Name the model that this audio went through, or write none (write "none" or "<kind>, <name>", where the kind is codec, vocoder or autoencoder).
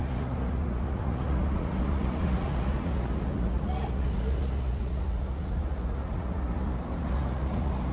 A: vocoder, Vocos